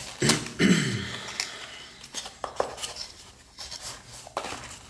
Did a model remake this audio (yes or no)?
no